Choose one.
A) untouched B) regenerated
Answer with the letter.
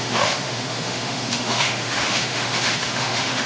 B